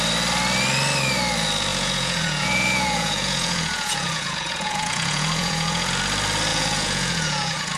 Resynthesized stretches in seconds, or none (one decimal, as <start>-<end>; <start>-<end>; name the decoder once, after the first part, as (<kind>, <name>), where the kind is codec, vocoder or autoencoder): 1.7-5.9 (vocoder, Vocos); 6.5-7.8